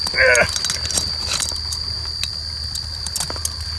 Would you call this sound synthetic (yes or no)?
no